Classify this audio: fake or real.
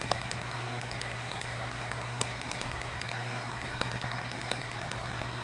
fake